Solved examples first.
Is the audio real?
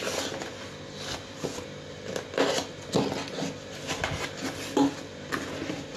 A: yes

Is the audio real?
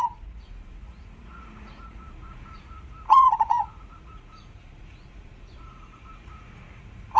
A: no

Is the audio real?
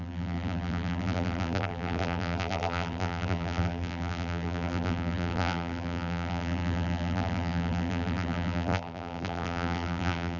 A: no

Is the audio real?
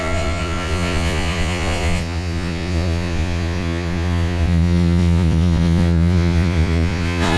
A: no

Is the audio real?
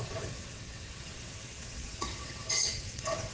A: no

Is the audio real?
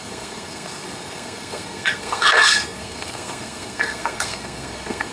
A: no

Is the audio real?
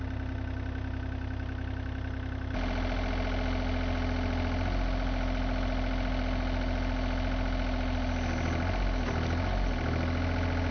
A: yes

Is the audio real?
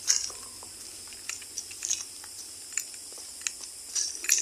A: no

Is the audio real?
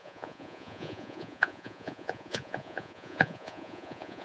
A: no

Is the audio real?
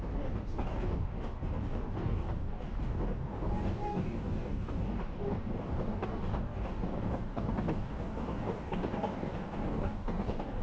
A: no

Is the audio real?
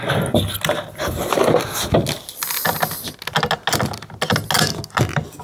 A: yes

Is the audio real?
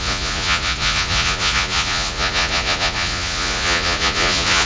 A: no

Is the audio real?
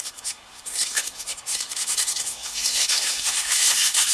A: no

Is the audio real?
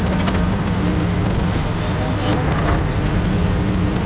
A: yes